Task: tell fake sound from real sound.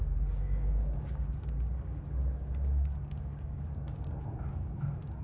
fake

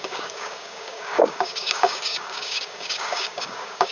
fake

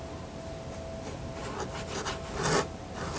real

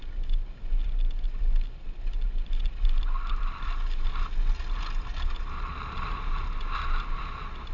real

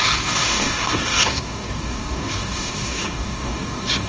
fake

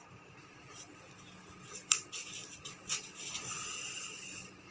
real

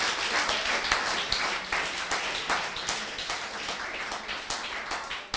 real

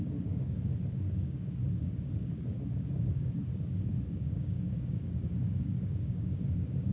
fake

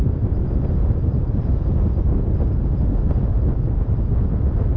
real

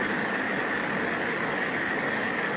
fake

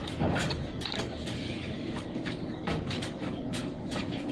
fake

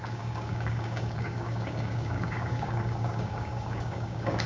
fake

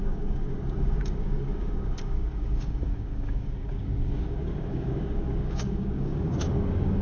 fake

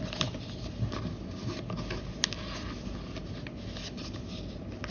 real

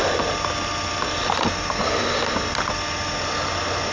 real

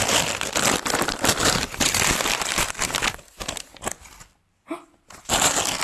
real